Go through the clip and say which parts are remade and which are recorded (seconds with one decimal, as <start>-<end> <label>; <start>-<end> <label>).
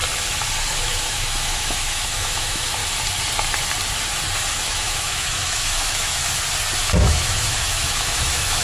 0.0-0.8 recorded; 0.8-2.8 remade; 2.8-4.5 recorded; 4.5-6.2 remade; 6.2-7.0 recorded; 7.0-8.6 remade